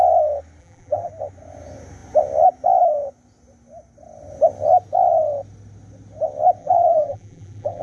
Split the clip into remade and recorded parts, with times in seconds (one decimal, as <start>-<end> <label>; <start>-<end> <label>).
0.0-0.6 recorded; 0.6-1.1 remade; 1.1-6.6 recorded; 6.6-7.8 remade